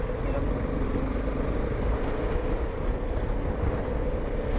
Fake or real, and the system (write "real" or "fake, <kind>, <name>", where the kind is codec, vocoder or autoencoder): real